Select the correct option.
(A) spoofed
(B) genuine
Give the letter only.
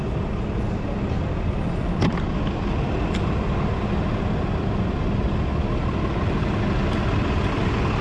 B